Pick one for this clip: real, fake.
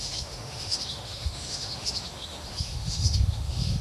fake